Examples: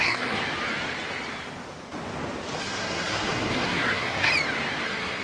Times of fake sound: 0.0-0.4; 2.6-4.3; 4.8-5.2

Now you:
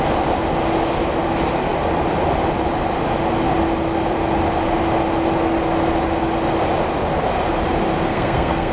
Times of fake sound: 8.1-8.7

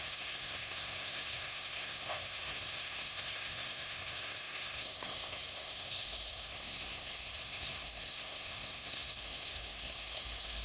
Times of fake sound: 0.0-10.6

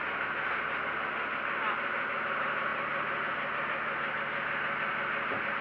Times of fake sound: none